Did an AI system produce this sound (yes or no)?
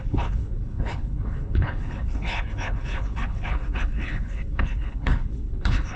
yes